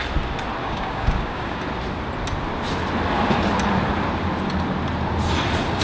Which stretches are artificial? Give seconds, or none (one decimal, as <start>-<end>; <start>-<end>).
0.6-1.6